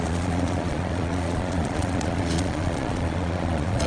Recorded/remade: remade